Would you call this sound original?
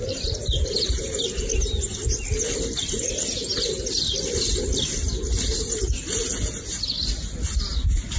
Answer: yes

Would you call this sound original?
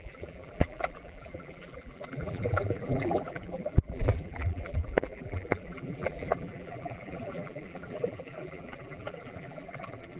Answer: no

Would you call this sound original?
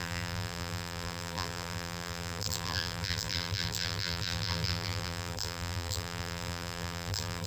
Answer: no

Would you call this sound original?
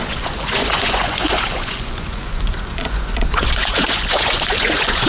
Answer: no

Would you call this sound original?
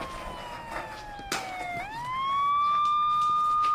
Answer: yes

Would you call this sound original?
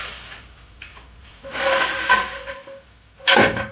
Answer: yes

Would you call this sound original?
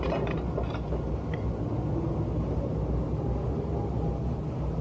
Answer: yes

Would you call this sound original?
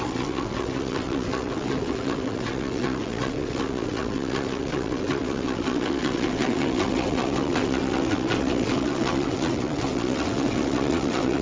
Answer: no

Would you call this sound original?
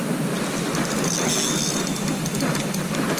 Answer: yes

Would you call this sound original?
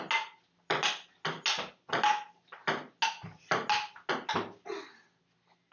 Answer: yes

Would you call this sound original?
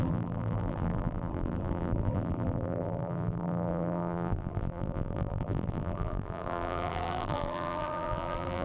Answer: no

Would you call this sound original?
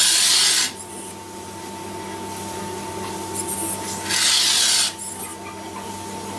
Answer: yes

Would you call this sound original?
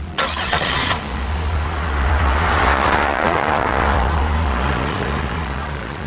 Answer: no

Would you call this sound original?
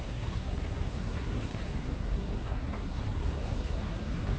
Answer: no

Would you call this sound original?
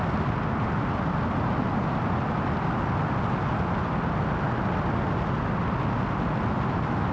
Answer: yes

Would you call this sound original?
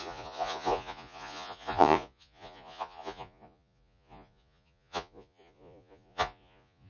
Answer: no